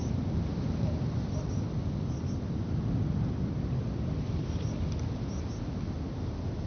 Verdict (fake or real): real